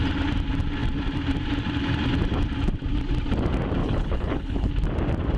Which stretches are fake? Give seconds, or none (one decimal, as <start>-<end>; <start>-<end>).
3.8-4.7